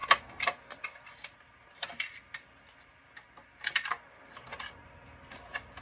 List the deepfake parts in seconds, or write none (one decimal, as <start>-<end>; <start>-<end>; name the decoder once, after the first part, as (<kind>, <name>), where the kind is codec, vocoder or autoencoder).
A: none

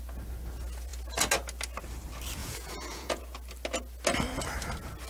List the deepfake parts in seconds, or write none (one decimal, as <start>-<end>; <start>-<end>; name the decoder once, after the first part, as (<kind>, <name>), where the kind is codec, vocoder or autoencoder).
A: 2.4-3.2 (vocoder, Vocos)

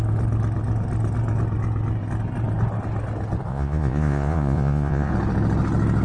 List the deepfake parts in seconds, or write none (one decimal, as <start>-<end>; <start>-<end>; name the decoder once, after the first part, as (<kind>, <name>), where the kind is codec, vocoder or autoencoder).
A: 3.5-5.1 (vocoder, Vocos)

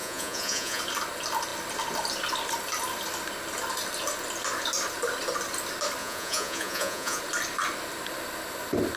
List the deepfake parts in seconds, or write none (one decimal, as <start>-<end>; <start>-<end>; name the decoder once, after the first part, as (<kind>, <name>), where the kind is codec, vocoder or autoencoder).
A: 0.0-0.8 (vocoder, Vocos); 6.0-7.2

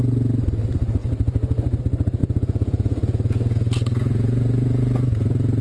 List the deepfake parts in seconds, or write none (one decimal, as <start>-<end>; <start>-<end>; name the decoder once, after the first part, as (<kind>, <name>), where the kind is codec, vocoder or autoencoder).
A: 1.0-1.8 (vocoder, Vocos); 2.2-5.6

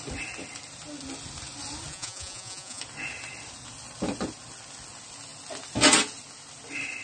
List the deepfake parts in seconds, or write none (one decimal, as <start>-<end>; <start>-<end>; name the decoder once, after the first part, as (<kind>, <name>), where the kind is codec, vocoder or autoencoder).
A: 1.9-2.8 (vocoder, Vocos)

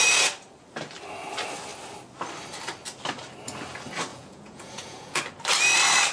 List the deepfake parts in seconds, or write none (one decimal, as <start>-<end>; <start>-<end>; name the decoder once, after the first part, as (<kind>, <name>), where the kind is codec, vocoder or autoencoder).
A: 4.1-5.2 (vocoder, Vocos)

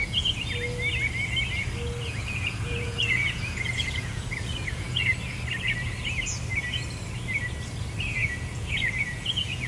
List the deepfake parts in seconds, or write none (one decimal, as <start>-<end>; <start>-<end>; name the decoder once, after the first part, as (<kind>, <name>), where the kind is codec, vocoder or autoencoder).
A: 0.0-0.5 (vocoder, Vocos); 2.0-5.1; 8.2-9.7